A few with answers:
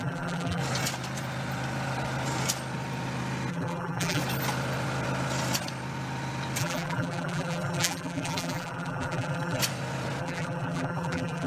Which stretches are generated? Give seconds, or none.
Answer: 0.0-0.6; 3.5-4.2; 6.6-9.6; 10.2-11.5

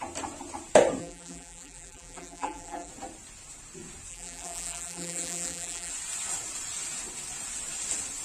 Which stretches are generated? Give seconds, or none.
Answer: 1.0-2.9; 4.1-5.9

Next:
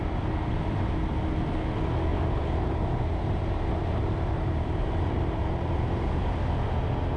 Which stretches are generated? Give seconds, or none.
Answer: 2.1-6.2

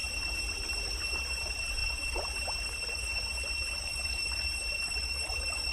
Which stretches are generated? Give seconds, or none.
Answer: none